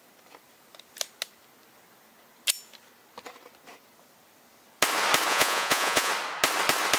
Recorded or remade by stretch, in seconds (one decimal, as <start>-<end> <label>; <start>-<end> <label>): 0.0-5.3 recorded; 5.3-6.1 remade; 6.1-7.0 recorded